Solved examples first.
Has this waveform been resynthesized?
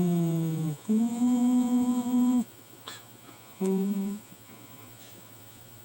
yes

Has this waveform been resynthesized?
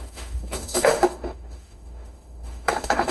yes